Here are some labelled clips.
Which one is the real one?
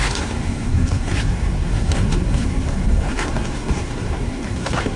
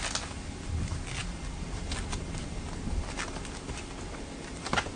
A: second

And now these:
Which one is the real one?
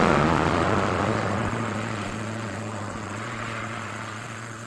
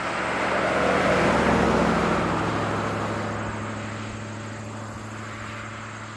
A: second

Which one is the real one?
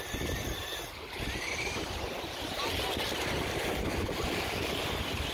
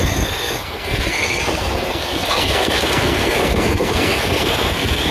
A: first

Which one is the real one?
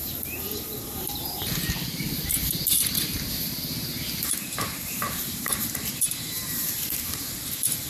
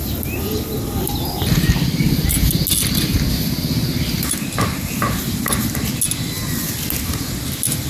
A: second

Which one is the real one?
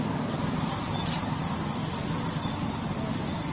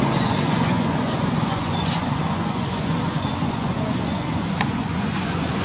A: first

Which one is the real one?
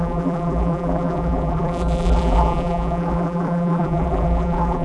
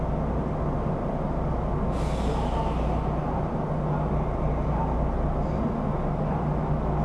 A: second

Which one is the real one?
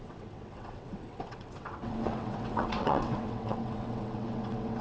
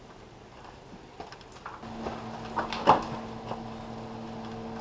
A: second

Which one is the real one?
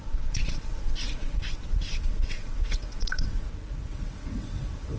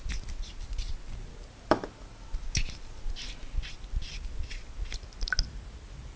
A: second